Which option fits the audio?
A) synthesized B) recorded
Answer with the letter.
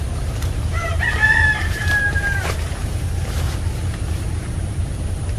A